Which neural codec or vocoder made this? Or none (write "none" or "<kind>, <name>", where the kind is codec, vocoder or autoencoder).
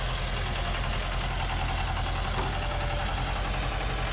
none